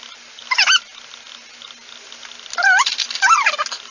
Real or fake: real